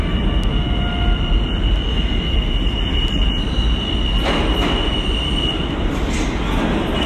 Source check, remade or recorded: recorded